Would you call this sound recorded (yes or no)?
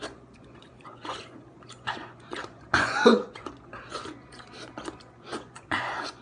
no